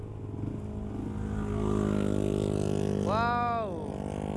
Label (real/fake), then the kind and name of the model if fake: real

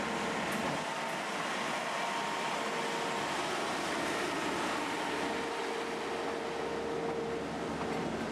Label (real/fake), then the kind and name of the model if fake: real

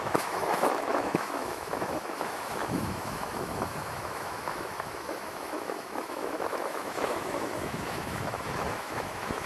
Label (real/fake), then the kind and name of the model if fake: fake, autoencoder, DAC-VAE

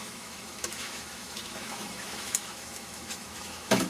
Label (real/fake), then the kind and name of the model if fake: fake, autoencoder, DAC-VAE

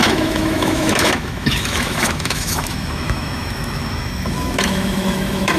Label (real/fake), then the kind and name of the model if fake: fake, autoencoder, DAC-VAE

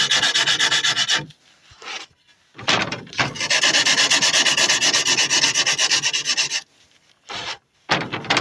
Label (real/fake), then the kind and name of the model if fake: real